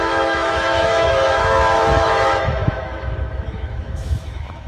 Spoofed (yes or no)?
yes